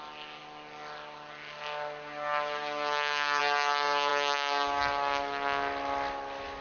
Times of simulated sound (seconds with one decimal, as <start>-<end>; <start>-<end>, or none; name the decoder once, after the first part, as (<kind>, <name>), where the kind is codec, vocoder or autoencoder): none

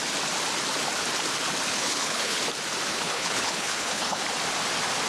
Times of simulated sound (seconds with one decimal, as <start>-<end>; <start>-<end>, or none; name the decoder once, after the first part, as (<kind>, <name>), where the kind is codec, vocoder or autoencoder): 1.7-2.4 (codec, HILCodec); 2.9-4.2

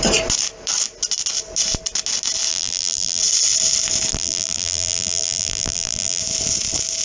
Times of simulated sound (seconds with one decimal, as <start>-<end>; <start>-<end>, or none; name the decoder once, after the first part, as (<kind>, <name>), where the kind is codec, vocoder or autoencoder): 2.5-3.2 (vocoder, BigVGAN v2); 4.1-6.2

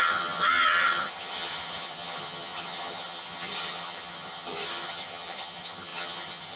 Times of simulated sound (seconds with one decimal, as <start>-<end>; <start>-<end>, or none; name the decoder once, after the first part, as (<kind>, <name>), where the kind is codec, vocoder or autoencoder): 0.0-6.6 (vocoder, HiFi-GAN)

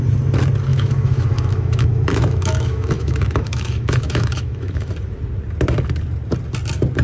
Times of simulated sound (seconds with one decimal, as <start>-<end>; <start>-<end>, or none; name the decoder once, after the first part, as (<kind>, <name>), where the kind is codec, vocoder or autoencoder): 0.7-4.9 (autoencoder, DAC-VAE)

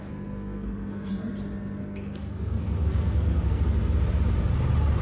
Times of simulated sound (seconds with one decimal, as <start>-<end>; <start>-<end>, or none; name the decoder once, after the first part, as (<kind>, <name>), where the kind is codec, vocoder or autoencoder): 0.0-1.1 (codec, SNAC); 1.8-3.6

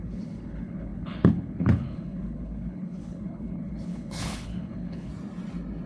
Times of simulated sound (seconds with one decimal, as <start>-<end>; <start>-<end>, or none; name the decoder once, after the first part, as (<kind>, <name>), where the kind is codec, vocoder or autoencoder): 0.0-5.1 (codec, HILCodec)